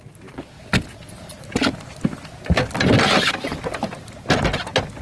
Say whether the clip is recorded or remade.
recorded